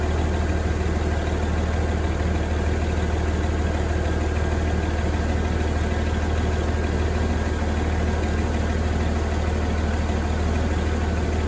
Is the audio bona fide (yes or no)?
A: yes